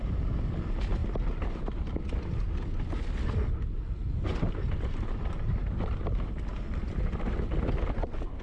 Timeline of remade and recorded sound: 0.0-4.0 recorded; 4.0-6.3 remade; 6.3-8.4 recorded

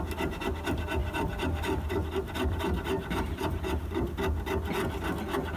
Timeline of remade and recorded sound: 0.0-1.0 recorded; 1.0-4.0 remade; 4.0-5.6 recorded